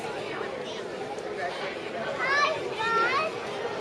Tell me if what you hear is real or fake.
real